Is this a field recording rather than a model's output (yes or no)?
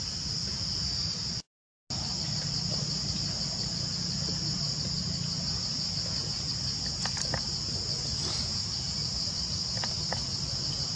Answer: yes